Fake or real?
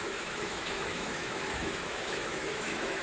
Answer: fake